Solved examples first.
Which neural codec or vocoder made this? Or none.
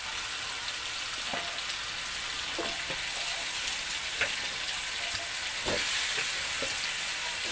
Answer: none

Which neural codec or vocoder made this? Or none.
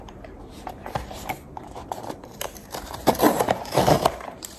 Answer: vocoder, BigVGAN v2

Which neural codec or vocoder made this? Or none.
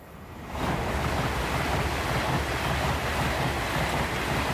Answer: none